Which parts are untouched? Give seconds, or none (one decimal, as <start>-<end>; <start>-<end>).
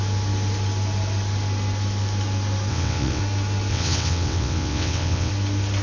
0.0-2.7; 3.2-3.7; 5.3-5.8